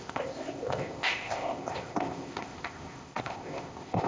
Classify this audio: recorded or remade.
remade